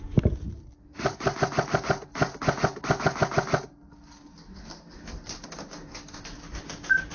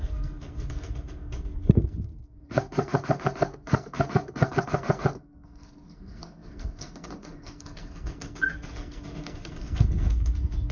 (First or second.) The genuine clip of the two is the first